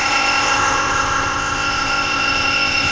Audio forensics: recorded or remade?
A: remade